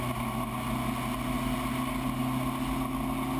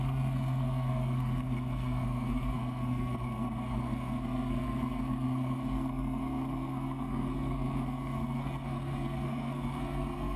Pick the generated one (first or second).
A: second